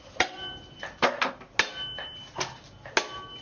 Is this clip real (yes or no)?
yes